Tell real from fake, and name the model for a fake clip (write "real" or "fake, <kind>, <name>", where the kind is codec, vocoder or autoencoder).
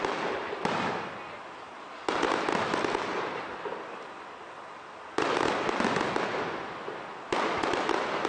real